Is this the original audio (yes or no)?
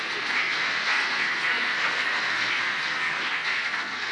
no